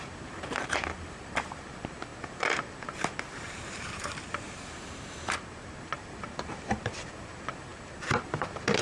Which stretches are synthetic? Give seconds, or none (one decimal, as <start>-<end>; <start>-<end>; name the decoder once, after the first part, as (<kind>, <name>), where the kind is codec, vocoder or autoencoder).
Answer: 0.0-8.8 (vocoder, BigVGAN v2)